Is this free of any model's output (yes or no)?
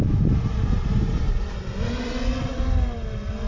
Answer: yes